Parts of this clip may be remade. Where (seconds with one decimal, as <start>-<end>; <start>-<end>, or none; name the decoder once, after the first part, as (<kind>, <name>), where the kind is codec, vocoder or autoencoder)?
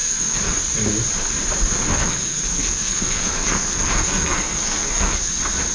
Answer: 0.0-0.5 (codec, SNAC); 1.9-5.3